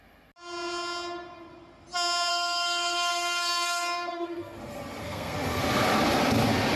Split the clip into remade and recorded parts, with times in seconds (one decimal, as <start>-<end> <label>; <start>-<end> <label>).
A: 0.0-2.3 recorded; 2.3-4.6 remade; 4.6-5.0 recorded; 5.0-5.6 remade; 5.6-6.8 recorded